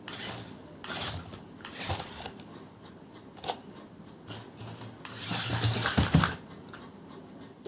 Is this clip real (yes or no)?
yes